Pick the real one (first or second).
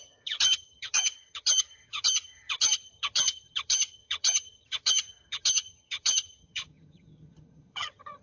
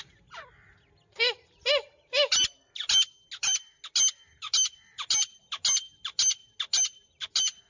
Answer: second